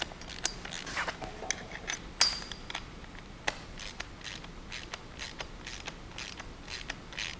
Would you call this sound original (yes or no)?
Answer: yes